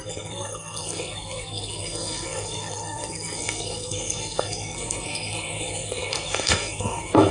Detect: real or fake fake